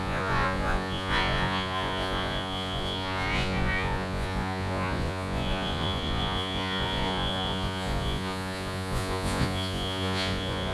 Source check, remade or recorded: remade